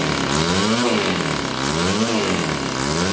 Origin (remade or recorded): recorded